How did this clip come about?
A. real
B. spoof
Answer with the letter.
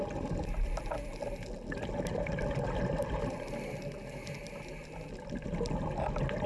A